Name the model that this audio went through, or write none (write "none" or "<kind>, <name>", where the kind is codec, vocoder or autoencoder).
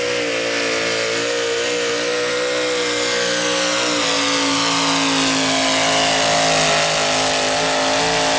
none